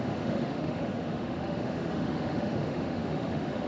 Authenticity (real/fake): fake